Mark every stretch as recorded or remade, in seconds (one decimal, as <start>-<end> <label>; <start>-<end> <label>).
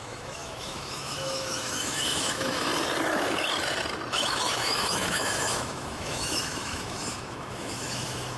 0.0-2.7 remade; 2.7-4.1 recorded; 4.1-8.4 remade